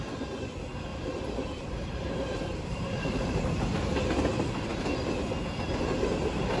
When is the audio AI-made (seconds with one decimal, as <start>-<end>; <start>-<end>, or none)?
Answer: 0.9-3.4